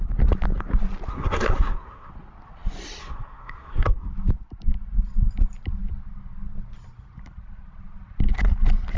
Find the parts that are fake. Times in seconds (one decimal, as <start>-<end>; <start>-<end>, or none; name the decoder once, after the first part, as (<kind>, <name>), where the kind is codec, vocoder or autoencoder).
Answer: 1.1-2.1 (codec, SNAC); 3.0-4.1